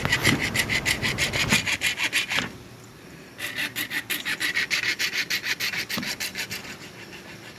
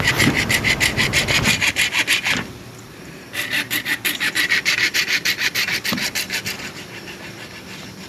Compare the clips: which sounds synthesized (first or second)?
second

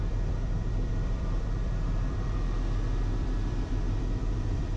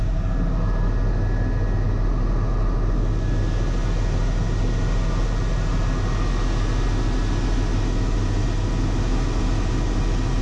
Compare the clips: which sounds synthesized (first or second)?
first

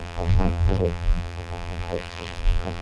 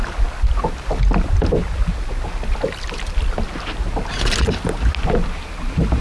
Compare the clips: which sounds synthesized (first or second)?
first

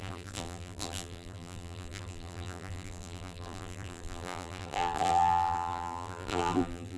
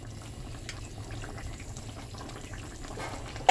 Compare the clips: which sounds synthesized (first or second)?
first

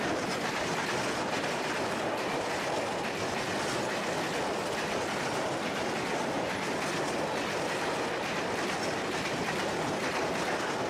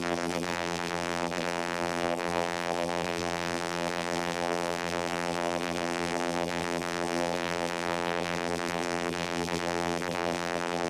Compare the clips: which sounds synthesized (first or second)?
second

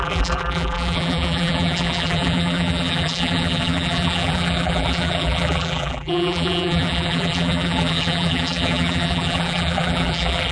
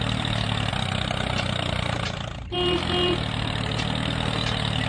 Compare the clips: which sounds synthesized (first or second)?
first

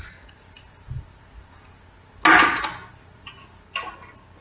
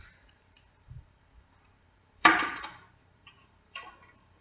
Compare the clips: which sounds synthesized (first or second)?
second